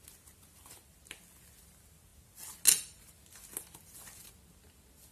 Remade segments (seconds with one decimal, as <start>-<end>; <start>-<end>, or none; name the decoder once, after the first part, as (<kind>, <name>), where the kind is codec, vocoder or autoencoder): none